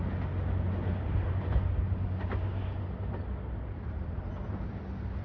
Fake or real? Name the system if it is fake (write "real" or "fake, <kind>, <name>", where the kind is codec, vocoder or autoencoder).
real